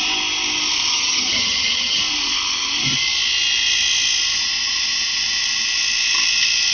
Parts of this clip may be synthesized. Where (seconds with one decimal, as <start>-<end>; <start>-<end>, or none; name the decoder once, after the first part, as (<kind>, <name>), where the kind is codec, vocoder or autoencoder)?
0.9-2.0 (vocoder, HiFi-GAN)

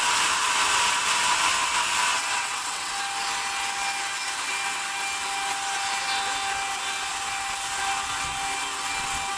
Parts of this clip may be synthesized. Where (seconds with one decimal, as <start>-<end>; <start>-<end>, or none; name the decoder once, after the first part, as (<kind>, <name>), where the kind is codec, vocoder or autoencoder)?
2.1-2.9 (vocoder, WaveNeXt)